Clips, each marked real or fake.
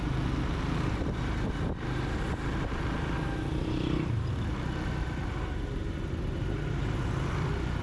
real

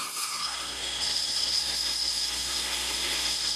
fake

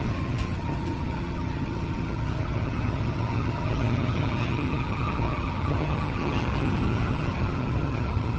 fake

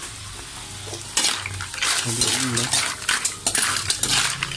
real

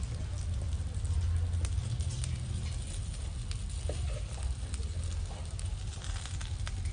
real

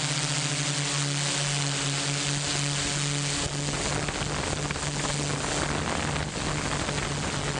real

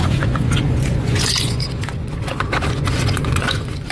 fake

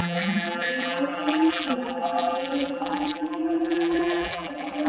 fake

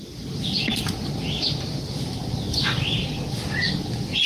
real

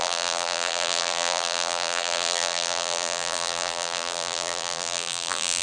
fake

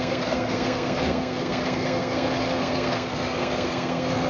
fake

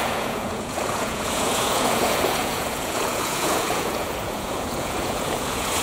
fake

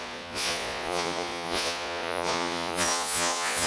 fake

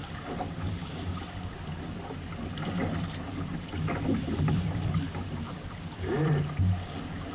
real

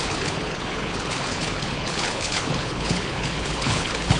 fake